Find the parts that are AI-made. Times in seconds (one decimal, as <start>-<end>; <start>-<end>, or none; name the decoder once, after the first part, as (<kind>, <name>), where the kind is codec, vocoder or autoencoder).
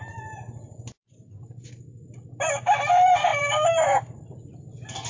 3.3-4.2 (vocoder, BigVGAN v2)